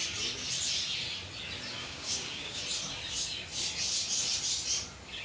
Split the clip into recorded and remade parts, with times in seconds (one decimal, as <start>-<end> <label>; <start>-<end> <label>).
0.0-1.8 recorded; 1.8-2.6 remade; 2.6-5.2 recorded